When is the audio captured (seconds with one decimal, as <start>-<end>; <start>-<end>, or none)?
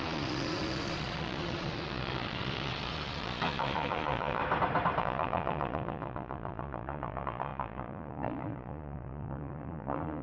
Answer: 4.4-5.0